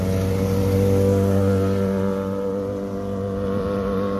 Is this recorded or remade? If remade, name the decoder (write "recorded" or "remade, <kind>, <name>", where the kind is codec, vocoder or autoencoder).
recorded